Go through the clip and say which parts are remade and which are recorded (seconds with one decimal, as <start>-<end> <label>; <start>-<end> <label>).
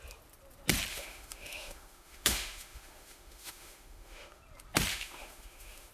0.0-0.9 recorded; 0.9-4.4 remade; 4.4-4.9 recorded; 4.9-5.9 remade